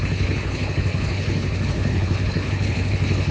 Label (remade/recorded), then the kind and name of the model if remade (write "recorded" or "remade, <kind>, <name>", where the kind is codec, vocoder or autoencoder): remade, codec, HILCodec